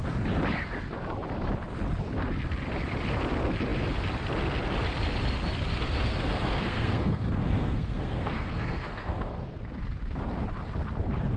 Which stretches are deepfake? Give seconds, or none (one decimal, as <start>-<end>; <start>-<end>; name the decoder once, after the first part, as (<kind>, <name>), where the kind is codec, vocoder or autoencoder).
5.7-9.6 (codec, SNAC)